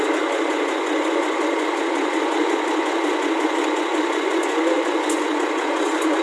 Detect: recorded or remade remade